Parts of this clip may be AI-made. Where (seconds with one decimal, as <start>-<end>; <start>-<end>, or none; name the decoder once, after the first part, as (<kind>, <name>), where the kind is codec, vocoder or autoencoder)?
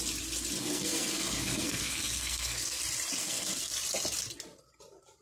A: 0.6-2.8 (codec, SNAC); 3.2-3.7